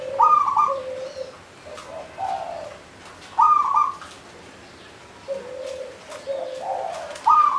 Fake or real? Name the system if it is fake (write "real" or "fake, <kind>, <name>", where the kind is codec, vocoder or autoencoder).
real